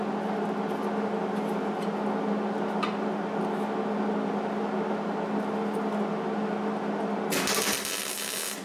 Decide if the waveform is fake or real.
real